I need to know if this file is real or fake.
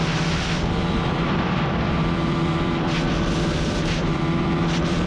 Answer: fake